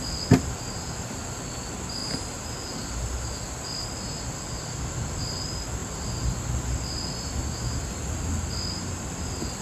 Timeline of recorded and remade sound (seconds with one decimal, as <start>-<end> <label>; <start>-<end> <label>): 0.0-9.6 recorded